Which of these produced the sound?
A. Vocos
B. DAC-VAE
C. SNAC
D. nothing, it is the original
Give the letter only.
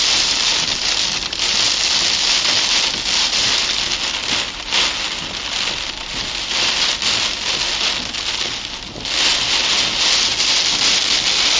D